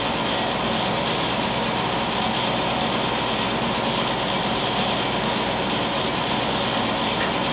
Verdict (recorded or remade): recorded